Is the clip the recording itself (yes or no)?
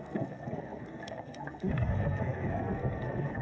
no